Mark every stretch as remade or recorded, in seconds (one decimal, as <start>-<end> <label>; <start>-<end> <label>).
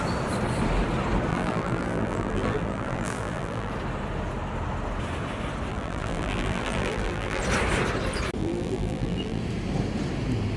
0.0-1.3 recorded; 1.3-3.7 remade; 3.7-5.7 recorded; 5.7-7.4 remade; 7.4-8.4 recorded; 8.4-9.4 remade; 9.4-10.6 recorded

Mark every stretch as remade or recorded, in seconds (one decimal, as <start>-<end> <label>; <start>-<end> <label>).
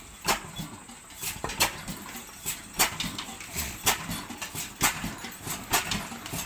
0.0-3.3 recorded; 3.3-4.3 remade; 4.3-6.5 recorded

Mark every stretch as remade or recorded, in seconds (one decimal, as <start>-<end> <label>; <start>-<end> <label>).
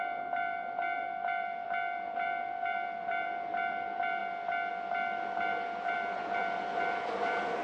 0.0-4.2 remade; 4.2-4.7 recorded; 4.7-7.6 remade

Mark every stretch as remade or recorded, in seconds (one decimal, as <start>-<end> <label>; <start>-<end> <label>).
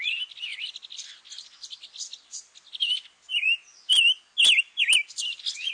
0.0-0.5 recorded; 0.5-3.9 remade; 3.9-5.7 recorded